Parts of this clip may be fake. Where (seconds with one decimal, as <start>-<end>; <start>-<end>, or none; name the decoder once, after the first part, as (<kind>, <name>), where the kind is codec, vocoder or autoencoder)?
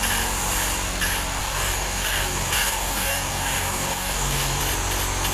1.4-4.6 (codec, DAC)